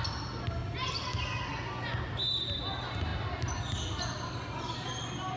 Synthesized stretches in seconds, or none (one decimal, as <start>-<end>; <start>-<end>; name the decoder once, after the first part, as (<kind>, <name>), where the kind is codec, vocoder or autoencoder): none